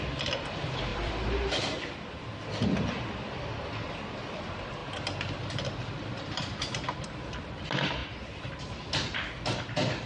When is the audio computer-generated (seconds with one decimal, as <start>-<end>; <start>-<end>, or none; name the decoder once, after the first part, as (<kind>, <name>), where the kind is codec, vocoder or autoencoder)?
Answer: 0.0-8.0 (vocoder, BigVGAN v2); 8.6-10.1